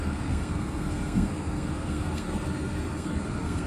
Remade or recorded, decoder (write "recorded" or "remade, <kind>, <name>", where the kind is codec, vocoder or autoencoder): remade, codec, SNAC